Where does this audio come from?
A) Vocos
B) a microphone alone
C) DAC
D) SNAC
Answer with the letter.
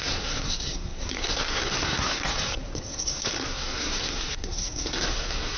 D